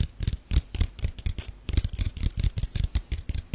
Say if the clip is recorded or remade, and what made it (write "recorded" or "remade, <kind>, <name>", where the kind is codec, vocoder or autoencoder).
recorded